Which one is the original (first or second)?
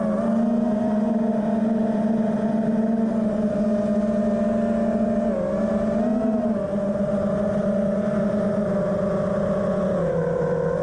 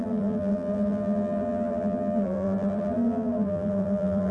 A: first